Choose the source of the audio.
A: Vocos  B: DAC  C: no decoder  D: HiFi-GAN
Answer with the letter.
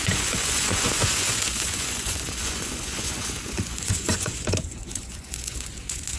A